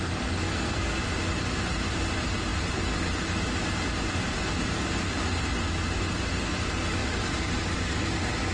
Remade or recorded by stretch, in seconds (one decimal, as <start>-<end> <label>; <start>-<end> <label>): 0.0-0.5 recorded; 0.5-1.0 remade; 1.0-8.5 recorded